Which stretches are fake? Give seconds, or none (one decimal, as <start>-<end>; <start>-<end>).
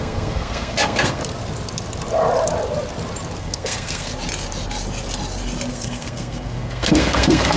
0.0-1.2; 3.4-4.1; 5.7-7.6